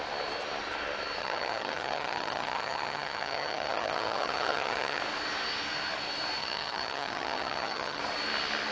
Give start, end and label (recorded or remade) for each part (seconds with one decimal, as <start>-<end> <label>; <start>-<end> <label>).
0.0-1.2 recorded; 1.2-5.0 remade; 5.0-6.4 recorded; 6.4-8.0 remade; 8.0-8.7 recorded